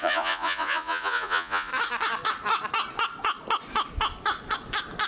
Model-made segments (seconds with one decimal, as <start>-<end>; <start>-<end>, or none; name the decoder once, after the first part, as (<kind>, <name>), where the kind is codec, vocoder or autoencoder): 0.0-1.7 (vocoder, Vocos)